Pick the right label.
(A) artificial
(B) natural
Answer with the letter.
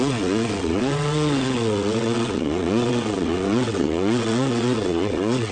A